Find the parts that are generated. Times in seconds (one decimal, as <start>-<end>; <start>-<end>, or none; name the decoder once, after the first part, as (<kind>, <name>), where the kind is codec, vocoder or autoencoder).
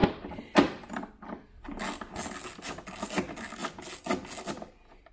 none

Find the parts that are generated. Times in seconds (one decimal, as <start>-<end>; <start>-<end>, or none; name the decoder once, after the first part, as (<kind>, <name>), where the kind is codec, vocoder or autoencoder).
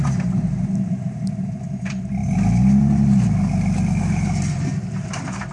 none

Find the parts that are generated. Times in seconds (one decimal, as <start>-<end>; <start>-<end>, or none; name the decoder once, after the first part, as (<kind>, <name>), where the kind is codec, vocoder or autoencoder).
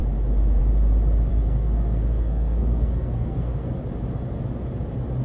1.3-3.8 (codec, SNAC)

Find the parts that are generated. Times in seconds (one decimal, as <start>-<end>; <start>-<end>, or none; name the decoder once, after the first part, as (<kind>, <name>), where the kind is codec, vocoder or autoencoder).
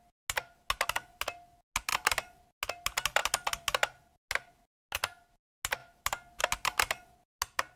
none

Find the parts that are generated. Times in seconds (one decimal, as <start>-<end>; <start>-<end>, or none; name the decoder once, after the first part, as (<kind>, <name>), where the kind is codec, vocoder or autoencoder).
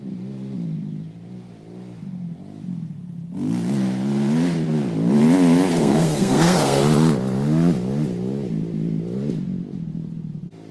5.7-6.8 (codec, SNAC)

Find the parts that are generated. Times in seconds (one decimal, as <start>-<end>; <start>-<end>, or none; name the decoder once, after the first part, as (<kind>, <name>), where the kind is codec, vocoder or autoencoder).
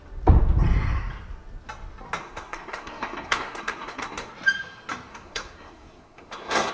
2.2-4.3 (codec, SNAC); 5.1-6.7